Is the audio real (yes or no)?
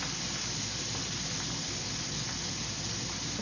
yes